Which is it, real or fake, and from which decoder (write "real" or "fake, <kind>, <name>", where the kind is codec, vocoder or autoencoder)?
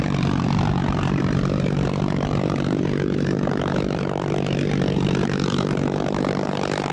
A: fake, vocoder, BigVGAN v2